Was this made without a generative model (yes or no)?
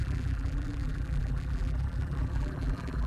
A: no